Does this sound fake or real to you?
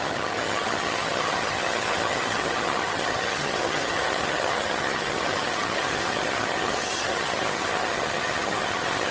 fake